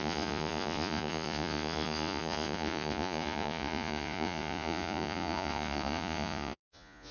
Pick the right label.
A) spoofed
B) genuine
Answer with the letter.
A